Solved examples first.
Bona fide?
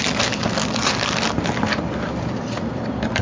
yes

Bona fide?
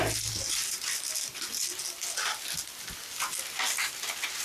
yes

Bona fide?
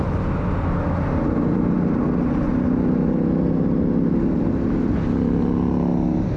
yes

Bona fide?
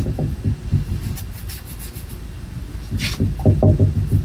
yes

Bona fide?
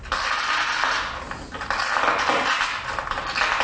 yes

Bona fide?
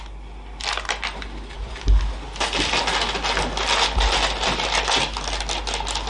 yes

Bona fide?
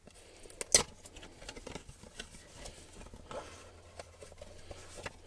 yes